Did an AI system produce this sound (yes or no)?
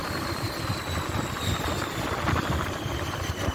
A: no